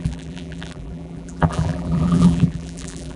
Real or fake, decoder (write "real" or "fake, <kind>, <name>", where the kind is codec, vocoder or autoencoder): fake, vocoder, BigVGAN v2